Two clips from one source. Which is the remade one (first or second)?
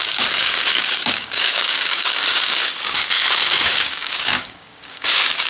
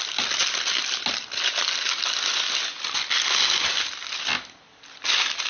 first